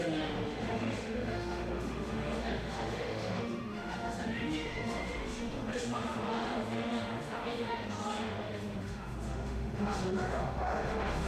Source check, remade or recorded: remade